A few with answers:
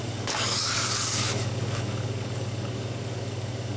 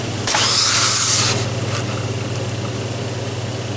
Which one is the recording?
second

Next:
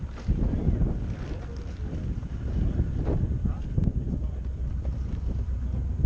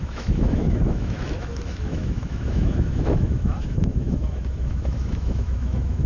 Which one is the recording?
first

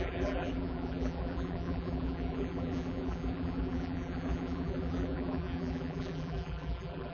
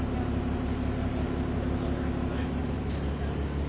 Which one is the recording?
second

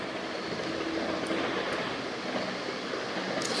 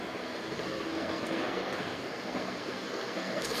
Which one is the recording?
first